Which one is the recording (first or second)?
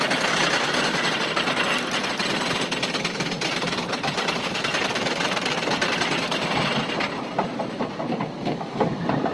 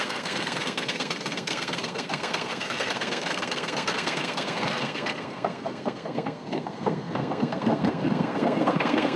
first